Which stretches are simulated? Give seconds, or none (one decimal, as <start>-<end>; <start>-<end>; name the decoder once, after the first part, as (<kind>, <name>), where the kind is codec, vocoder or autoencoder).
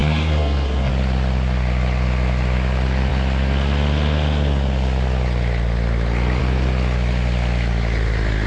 0.0-0.9 (codec, SNAC)